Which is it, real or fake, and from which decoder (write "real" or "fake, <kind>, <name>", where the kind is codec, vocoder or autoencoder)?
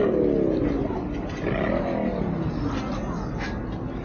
real